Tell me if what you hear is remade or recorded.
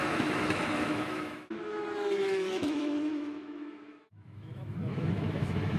remade